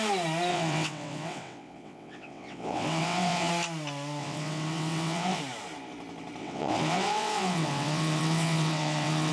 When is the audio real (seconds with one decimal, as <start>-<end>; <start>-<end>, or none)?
0.0-0.5; 3.5-4.2; 5.4-6.4